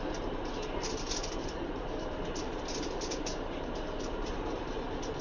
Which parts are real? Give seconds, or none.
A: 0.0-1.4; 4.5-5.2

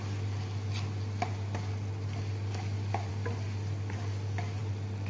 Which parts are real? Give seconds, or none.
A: 3.1-5.1

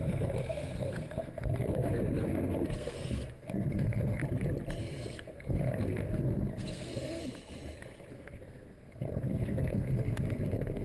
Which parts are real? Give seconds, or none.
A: 4.2-4.8; 7.2-8.1

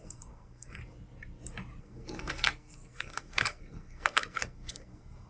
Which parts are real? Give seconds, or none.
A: 0.8-1.8

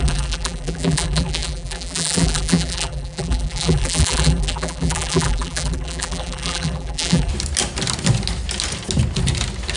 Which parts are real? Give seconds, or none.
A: 7.3-9.8